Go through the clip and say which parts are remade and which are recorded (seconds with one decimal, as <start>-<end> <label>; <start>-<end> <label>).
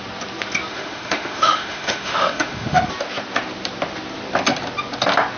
0.0-0.7 recorded; 0.7-2.9 remade; 2.9-5.4 recorded